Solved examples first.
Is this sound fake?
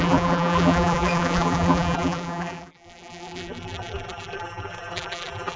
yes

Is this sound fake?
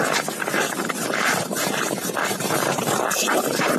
no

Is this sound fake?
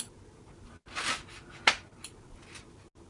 no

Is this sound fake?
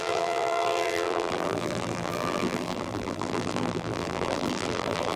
yes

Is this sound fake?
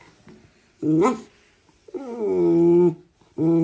no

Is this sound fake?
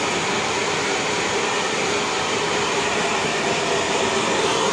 yes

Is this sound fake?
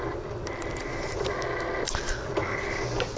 yes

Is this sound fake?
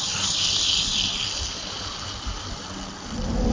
yes